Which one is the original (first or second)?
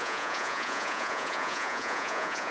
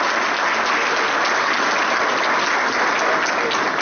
second